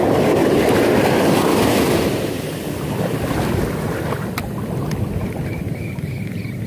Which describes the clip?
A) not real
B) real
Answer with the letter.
B